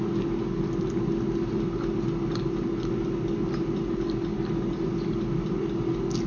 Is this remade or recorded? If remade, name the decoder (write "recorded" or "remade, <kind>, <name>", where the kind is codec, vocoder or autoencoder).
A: recorded